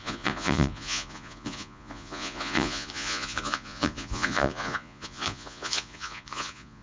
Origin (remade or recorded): remade